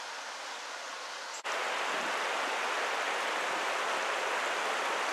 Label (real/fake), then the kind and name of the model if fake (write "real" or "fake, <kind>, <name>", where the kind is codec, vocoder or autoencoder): real